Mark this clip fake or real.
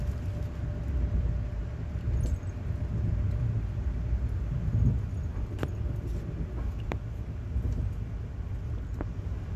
real